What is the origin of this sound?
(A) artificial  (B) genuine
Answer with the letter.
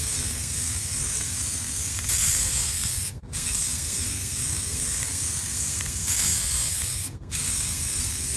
A